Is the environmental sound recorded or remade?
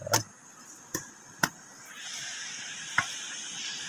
recorded